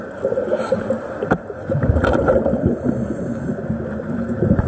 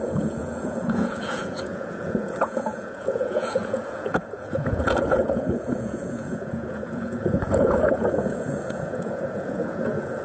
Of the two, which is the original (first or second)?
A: first